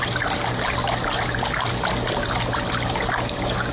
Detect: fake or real real